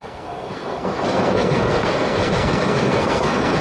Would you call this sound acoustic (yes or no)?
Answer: no